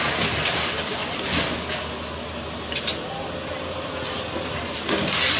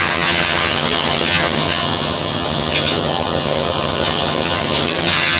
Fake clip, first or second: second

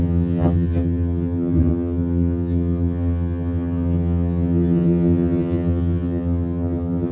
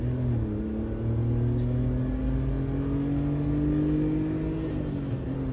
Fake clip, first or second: first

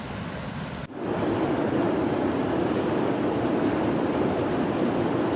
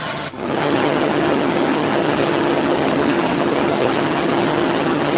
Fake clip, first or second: second